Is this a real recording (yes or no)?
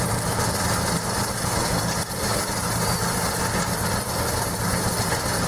yes